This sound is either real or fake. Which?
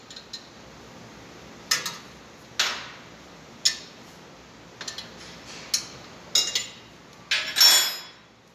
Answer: real